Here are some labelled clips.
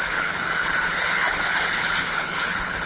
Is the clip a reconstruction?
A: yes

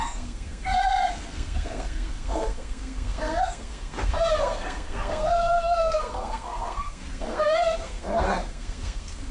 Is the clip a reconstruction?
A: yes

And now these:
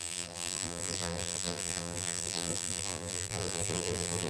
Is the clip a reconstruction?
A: yes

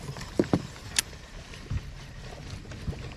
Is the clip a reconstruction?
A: no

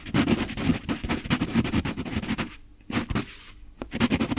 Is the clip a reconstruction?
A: no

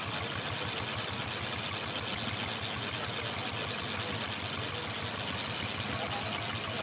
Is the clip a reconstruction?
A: no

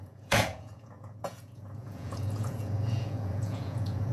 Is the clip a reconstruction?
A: yes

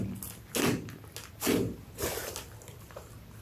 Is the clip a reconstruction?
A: no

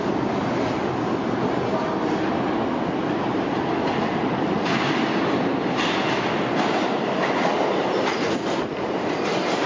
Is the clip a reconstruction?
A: no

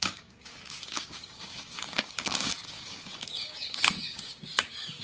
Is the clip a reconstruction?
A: yes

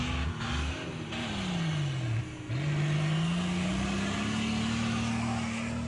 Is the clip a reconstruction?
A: no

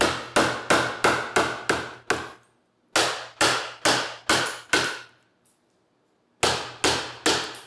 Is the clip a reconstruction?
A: no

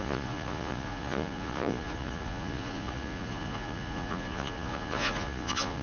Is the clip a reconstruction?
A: yes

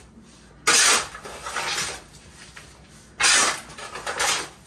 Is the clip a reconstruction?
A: no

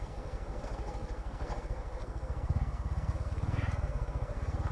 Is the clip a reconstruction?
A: yes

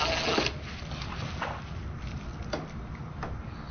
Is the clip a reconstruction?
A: no